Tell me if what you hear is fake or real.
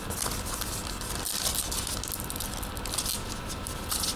real